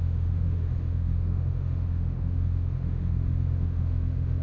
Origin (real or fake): fake